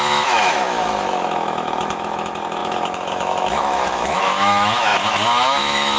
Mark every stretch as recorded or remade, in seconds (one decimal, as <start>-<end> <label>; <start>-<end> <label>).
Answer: 0.0-6.0 remade

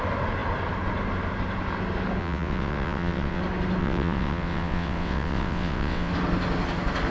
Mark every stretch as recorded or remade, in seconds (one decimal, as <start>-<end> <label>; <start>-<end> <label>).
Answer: 0.0-2.2 recorded; 2.2-3.4 remade; 3.4-3.8 recorded; 3.8-6.1 remade; 6.1-7.1 recorded

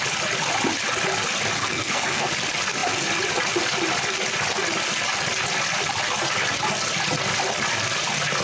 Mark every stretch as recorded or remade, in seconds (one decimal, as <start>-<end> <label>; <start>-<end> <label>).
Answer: 0.0-1.6 recorded; 1.6-2.3 remade; 2.3-8.4 recorded

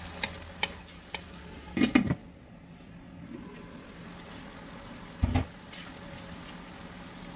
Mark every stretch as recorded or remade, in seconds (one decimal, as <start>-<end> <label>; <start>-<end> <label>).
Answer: 0.0-7.4 recorded

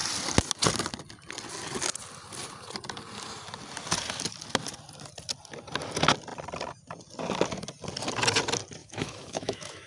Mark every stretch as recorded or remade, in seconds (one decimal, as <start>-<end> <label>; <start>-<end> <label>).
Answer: 0.0-8.8 recorded; 8.8-9.9 remade

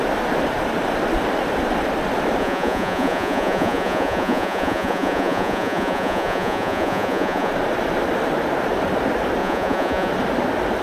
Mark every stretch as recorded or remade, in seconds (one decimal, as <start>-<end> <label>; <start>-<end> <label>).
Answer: 0.0-2.4 recorded; 2.4-7.5 remade; 7.5-9.4 recorded; 9.4-10.1 remade; 10.1-10.8 recorded

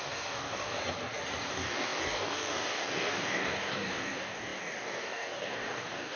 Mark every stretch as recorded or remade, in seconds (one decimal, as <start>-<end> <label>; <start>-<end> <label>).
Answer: 0.0-0.8 remade; 0.8-1.5 recorded; 1.5-6.2 remade